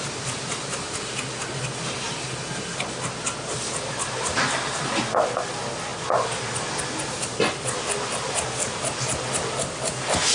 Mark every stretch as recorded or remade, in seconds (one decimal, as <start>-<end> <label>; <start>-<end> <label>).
0.0-10.3 recorded

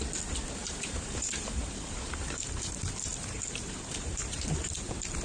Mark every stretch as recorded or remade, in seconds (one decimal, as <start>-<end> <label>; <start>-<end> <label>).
0.0-0.6 recorded; 0.6-2.7 remade; 2.7-3.1 recorded; 3.1-4.6 remade; 4.6-5.2 recorded

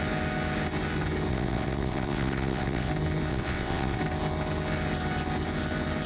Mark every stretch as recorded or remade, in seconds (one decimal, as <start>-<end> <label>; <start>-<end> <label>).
0.0-1.3 recorded; 1.3-2.9 remade; 2.9-3.3 recorded; 3.3-4.0 remade; 4.0-6.1 recorded

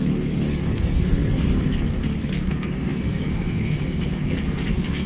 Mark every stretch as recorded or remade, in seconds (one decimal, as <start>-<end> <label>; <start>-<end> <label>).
0.0-5.1 remade